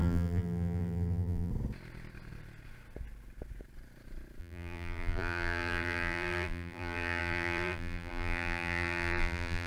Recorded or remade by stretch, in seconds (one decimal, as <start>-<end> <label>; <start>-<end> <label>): 0.0-1.5 remade; 1.5-4.4 recorded; 4.4-9.7 remade